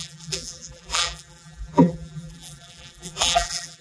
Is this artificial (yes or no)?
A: yes